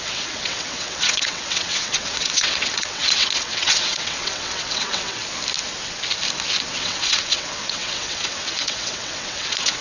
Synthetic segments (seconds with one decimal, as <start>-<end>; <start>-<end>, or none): 0.0-5.2; 6.7-9.8